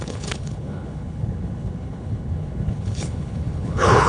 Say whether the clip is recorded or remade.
remade